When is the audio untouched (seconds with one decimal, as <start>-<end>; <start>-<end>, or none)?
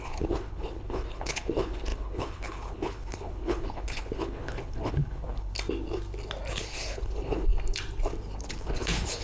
5.5-6.5; 7.5-8.4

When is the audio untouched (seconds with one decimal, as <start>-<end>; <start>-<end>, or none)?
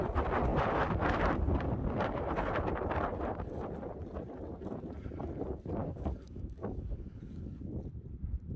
0.0-5.8; 7.7-8.6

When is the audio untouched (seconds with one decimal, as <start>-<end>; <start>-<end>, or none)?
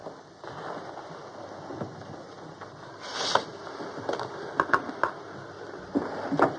0.0-6.6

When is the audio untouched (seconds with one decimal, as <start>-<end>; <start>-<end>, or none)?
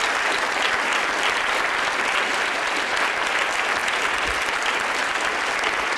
0.0-6.0